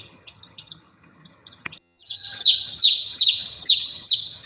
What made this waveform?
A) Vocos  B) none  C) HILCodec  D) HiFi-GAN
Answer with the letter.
D